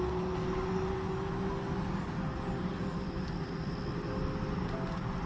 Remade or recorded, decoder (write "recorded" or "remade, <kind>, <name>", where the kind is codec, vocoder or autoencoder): recorded